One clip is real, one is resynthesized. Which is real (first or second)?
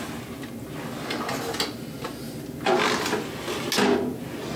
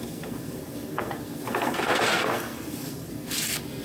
first